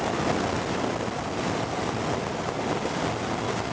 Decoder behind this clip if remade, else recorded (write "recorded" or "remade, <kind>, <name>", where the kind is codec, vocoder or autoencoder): recorded